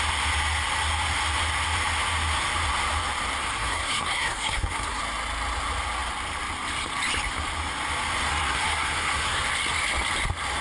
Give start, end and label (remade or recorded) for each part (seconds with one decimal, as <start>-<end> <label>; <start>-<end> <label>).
0.0-3.4 recorded; 3.4-5.0 remade; 5.0-8.3 recorded; 8.3-9.4 remade; 9.4-10.6 recorded